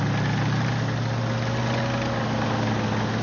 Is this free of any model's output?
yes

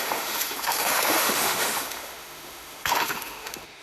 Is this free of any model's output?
no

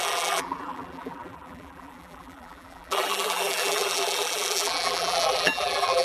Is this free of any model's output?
no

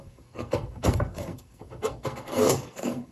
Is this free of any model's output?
no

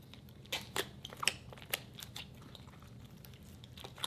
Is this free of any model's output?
yes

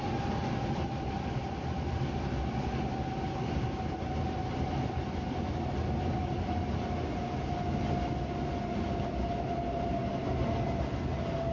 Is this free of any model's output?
yes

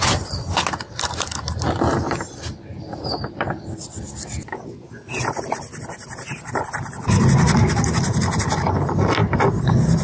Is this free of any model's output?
yes